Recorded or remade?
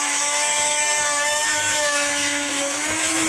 remade